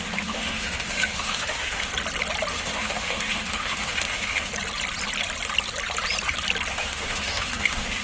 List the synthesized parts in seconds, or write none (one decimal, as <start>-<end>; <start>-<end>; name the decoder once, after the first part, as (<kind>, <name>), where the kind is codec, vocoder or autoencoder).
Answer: 0.0-1.9 (autoencoder, DAC-VAE); 2.5-4.5; 6.7-8.0